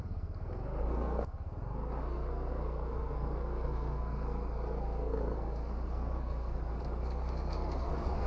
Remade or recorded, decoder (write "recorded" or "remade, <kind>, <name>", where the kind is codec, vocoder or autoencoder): remade, codec, SNAC